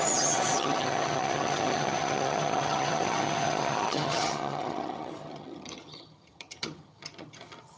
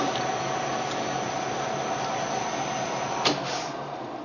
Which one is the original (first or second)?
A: second